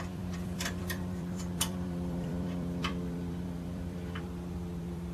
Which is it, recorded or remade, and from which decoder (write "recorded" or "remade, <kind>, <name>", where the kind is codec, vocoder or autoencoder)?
remade, vocoder, BigVGAN v2